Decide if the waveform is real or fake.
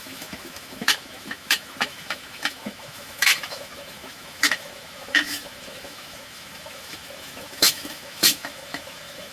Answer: fake